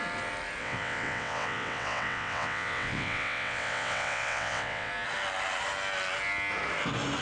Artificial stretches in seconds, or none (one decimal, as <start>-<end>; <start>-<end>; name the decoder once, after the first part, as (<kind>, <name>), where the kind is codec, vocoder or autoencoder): 0.6-4.9 (vocoder, WaveNeXt)